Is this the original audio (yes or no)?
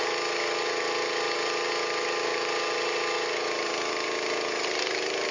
yes